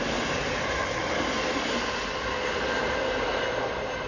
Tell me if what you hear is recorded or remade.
recorded